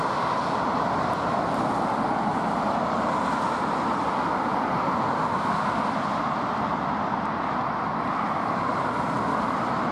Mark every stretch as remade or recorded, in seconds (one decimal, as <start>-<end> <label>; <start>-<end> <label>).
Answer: 0.0-9.9 recorded